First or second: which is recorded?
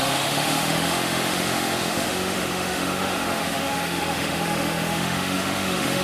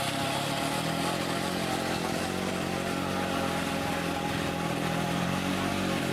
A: second